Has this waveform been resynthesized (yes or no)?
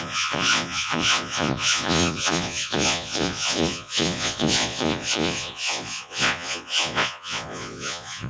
yes